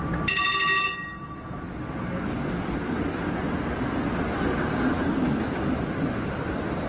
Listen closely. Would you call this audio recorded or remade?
recorded